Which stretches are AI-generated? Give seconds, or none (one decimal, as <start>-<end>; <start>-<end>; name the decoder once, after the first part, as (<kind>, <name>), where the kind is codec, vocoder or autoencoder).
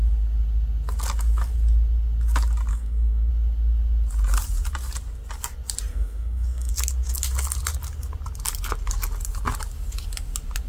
2.7-3.3 (codec, SNAC); 5.9-6.7